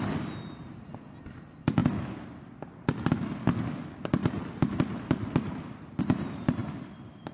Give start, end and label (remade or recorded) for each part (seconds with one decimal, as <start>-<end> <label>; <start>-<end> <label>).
0.0-7.3 recorded